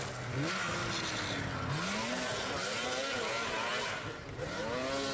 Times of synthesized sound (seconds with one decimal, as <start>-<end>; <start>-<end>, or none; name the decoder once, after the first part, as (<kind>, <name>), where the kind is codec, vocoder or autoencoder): none

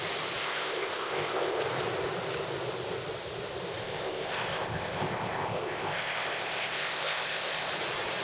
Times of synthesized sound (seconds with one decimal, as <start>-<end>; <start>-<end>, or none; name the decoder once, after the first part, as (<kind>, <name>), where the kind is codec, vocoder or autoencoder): 0.4-1.6 (codec, ZipCodec); 3.8-7.7

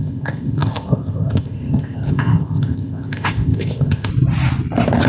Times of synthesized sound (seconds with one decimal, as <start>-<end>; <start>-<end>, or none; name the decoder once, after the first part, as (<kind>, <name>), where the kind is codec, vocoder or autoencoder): 0.0-4.1 (codec, ZipCodec)

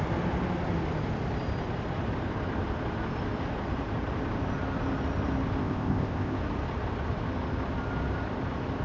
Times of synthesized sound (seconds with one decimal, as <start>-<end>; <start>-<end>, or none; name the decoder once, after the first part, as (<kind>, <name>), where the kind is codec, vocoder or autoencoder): 5.6-6.4 (codec, ZipCodec)

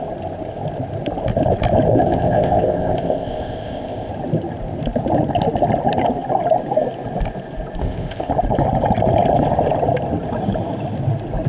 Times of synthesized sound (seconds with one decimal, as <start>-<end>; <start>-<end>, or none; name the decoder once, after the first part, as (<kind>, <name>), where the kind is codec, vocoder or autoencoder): 1.9-4.1 (codec, ZipCodec); 7.8-8.3

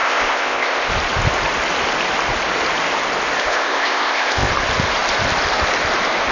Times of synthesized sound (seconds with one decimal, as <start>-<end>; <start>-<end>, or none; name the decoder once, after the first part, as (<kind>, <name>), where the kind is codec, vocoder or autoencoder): 0.0-0.9 (codec, ZipCodec); 3.4-4.5

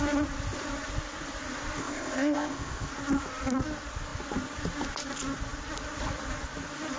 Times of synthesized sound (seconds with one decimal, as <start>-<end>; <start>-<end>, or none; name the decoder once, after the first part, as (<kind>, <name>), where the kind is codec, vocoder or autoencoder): 1.8-2.9 (codec, ZipCodec)